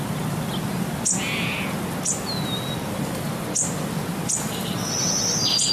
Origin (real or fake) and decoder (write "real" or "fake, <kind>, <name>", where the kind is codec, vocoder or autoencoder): real